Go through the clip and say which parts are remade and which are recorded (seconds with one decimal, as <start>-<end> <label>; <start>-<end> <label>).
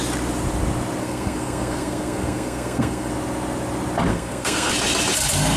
0.0-1.0 recorded; 1.0-3.1 remade; 3.1-4.1 recorded; 4.1-4.7 remade; 4.7-5.6 recorded